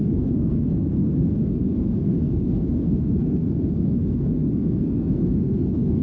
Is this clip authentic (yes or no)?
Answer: no